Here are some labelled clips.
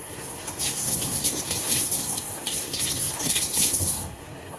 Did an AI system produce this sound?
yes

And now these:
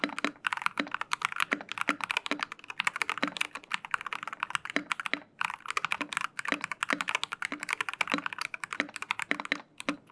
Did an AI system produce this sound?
no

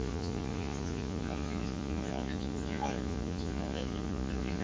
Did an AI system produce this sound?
yes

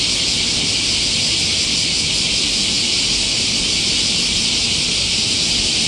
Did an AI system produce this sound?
no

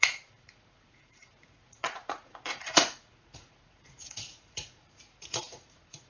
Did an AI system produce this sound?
yes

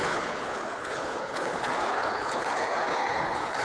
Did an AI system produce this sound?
yes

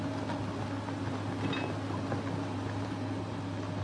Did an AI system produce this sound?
no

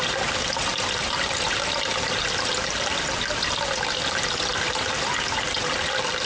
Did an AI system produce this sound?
no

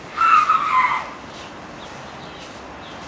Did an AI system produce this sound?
no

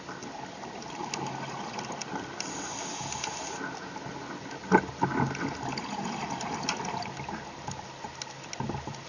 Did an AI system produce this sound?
no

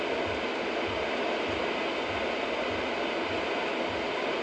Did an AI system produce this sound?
no